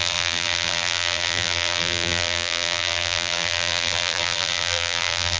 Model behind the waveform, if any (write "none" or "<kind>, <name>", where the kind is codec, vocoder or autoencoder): vocoder, BigVGAN v2